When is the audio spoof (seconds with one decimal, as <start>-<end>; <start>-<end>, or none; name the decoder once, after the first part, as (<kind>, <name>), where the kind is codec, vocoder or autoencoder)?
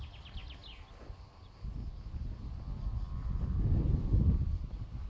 none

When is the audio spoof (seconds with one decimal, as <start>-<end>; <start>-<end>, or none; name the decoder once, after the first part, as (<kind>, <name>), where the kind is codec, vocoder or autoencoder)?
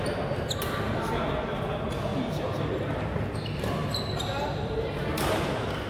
none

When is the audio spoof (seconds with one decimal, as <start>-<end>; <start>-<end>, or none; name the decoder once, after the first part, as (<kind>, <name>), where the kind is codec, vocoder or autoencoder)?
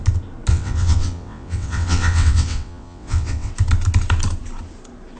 0.5-3.5 (vocoder, WaveNeXt)